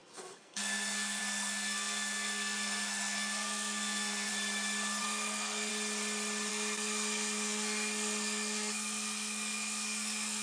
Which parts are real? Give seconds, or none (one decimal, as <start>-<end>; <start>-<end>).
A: 4.3-5.0; 5.7-6.5